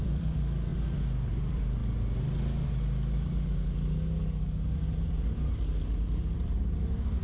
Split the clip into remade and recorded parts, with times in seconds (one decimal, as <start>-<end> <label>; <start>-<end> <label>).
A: 0.0-0.7 remade; 0.7-1.3 recorded; 1.3-1.8 remade; 1.8-4.6 recorded; 4.6-7.2 remade